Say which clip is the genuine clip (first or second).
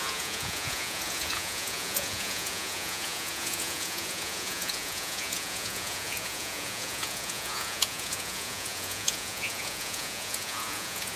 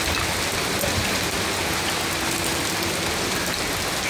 second